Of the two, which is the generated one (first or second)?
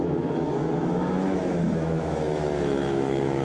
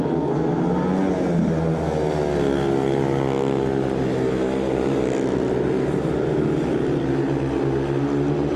first